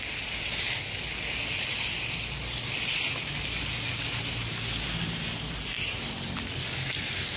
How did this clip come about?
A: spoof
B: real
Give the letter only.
B